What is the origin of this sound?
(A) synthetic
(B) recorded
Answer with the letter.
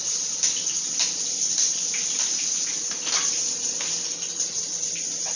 B